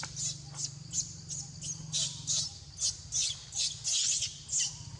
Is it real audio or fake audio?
real